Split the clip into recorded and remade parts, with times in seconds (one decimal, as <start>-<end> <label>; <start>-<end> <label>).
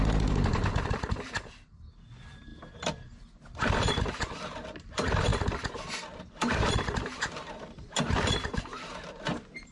0.0-2.5 remade; 2.5-4.0 recorded; 4.0-5.3 remade; 5.3-6.2 recorded; 6.2-9.7 remade